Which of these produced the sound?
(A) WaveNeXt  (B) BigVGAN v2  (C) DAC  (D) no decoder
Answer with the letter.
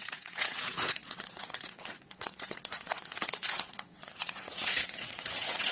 A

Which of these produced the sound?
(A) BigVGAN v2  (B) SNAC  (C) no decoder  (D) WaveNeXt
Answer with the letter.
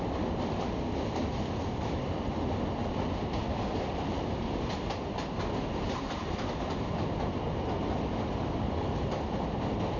C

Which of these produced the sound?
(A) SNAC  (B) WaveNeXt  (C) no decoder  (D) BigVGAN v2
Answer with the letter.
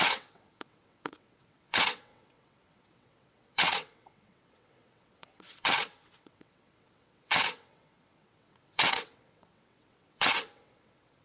B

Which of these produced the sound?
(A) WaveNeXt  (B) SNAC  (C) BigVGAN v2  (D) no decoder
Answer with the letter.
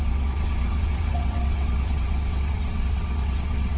A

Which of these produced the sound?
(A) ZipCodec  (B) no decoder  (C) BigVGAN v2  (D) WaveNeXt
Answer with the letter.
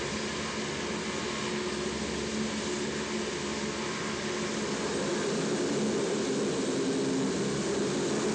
B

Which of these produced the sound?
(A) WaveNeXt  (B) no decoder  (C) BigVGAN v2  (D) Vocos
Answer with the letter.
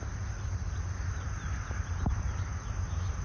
B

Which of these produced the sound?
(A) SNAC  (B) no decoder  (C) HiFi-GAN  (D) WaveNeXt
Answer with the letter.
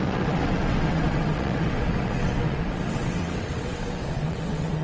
D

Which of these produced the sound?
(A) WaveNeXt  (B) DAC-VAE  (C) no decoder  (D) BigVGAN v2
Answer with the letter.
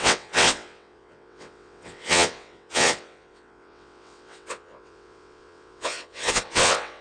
A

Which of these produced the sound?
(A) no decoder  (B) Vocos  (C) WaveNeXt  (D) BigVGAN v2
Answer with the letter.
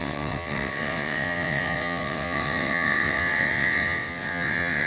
C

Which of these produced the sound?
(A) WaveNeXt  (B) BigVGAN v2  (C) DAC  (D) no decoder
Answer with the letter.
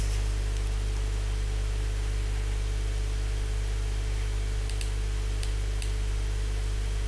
D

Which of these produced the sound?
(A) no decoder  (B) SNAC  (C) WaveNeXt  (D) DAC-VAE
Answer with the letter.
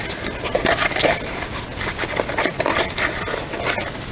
A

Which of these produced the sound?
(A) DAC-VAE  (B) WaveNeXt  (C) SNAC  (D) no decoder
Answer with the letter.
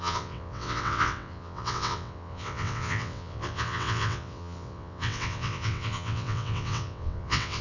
B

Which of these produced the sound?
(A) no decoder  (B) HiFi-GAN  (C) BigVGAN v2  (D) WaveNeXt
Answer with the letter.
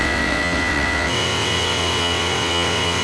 D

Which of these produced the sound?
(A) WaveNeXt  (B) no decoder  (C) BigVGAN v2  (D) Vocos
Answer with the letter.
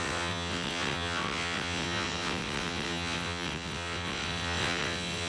A